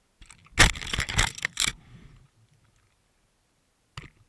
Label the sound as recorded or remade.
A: recorded